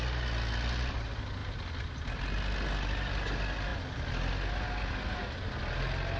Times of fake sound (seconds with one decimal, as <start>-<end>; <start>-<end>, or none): none